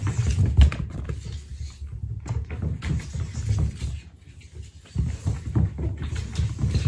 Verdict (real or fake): fake